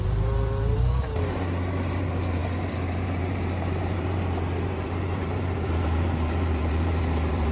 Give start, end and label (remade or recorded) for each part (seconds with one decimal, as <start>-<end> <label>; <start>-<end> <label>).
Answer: 0.0-7.5 remade